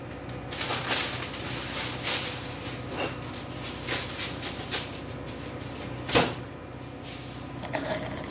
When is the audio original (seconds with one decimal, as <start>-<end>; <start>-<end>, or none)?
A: 0.0-8.3